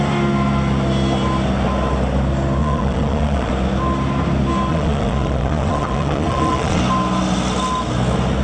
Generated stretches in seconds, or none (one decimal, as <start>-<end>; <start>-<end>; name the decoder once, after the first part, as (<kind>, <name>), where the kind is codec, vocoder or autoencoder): 2.6-3.5 (vocoder, Vocos); 4.7-6.8